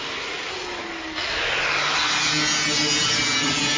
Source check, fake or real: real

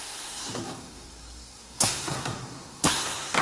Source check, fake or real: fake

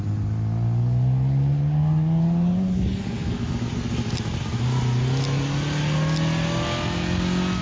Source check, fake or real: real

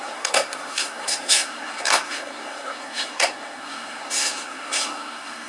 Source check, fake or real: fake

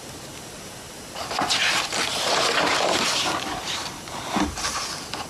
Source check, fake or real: fake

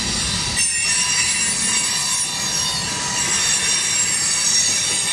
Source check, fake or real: real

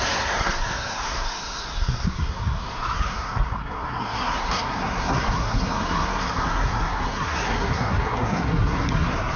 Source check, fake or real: fake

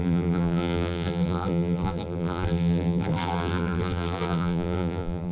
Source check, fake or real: fake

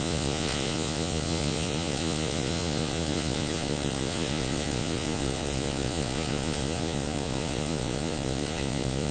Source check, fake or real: fake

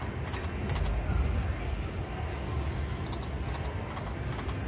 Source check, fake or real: real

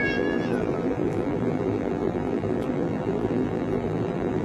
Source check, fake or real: fake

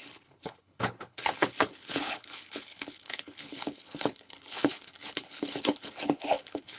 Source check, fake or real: fake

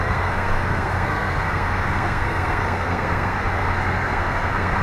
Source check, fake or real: fake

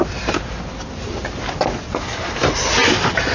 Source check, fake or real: real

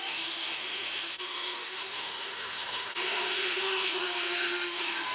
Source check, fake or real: fake